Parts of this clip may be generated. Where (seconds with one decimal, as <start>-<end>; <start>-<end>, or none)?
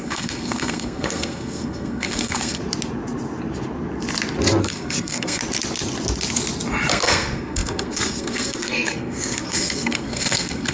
0.0-2.6; 4.6-5.4; 6.9-10.7